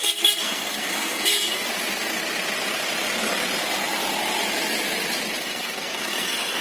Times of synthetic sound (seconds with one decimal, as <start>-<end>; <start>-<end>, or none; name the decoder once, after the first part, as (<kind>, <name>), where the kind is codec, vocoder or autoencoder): 0.0-1.7 (codec, SNAC); 5.4-6.6